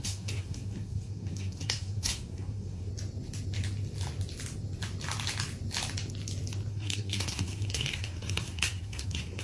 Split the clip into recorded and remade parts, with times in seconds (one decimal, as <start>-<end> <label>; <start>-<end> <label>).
0.0-2.9 remade; 2.9-6.7 recorded; 6.7-9.4 remade